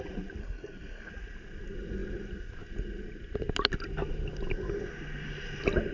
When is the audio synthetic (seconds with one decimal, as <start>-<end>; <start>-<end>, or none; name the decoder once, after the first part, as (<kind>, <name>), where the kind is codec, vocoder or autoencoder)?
0.4-1.1 (codec, SNAC)